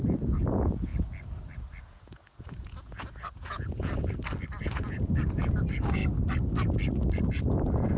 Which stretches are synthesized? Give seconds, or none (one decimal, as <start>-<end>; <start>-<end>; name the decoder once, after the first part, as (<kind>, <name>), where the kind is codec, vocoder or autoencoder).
0.0-0.9 (vocoder, Vocos); 1.8-3.9; 4.6-6.0; 7.2-8.0